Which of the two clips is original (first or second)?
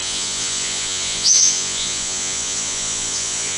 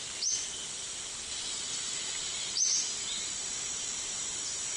second